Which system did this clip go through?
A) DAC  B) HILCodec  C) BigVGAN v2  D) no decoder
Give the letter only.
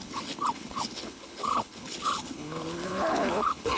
B